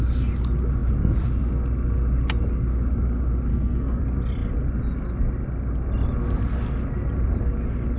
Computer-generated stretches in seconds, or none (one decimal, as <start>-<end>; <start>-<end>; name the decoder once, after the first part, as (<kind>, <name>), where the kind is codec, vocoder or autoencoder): 3.5-4.0 (codec, SNAC)

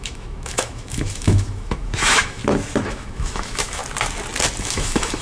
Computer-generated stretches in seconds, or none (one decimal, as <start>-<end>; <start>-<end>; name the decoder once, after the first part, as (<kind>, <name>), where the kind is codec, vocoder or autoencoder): 0.0-2.4 (autoencoder, DAC-VAE); 2.9-3.8; 4.6-5.2

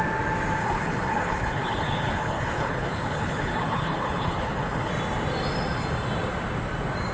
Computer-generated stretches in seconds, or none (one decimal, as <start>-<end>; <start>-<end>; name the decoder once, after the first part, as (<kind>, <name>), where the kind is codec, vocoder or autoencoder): 0.6-4.9 (codec, HILCodec)

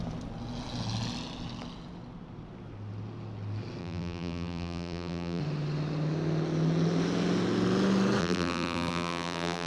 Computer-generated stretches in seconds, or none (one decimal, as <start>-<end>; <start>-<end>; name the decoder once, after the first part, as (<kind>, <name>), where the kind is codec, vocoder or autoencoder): 3.8-5.4 (vocoder, BigVGAN v2); 8.2-9.7

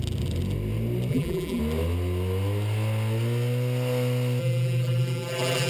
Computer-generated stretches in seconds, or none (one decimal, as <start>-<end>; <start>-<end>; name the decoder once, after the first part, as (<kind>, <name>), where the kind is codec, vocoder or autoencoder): 1.1-1.6 (vocoder, BigVGAN v2); 4.4-5.7

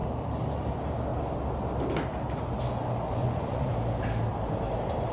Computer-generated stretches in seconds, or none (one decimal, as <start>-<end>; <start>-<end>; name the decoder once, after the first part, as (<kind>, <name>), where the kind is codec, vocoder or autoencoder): 3.2-3.7 (vocoder, Vocos)

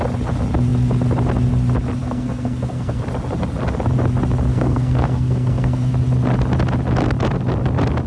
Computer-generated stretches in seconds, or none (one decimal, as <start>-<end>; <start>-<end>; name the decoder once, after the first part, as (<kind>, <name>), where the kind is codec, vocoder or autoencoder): 2.0-3.0 (codec, SNAC); 4.5-5.9

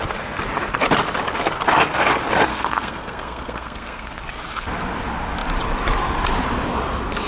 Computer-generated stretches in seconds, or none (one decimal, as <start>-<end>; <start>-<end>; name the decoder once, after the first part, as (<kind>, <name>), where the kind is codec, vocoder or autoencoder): 2.5-4.2 (codec, SNAC)